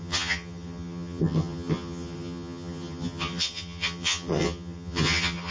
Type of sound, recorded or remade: remade